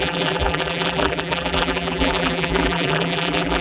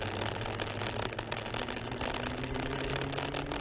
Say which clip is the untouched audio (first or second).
second